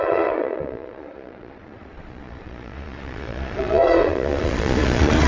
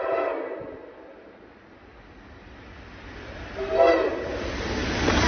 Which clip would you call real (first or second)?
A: second